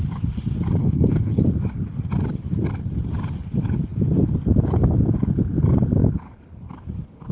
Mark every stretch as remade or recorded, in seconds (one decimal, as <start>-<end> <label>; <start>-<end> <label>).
0.0-0.8 recorded; 0.8-1.4 remade; 1.4-7.3 recorded

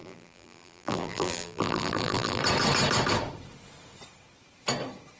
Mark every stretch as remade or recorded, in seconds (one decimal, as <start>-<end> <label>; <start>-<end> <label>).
0.0-2.4 remade; 2.4-5.2 recorded

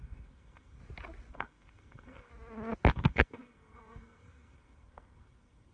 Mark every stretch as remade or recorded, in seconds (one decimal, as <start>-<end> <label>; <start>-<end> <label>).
0.0-0.8 remade; 0.8-1.3 recorded; 1.3-2.3 remade; 2.3-2.9 recorded; 2.9-5.7 remade

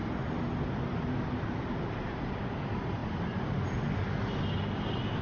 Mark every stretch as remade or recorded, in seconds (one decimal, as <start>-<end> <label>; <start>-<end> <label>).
0.0-5.2 recorded

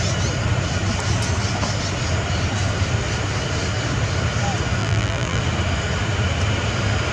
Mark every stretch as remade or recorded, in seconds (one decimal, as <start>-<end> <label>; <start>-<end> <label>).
0.0-4.8 recorded; 4.8-5.4 remade; 5.4-7.1 recorded

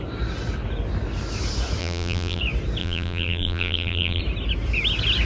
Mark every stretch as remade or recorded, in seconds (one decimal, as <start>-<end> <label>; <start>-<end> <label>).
0.0-1.8 recorded; 1.8-2.4 remade; 2.4-2.8 recorded; 2.8-4.2 remade; 4.2-5.3 recorded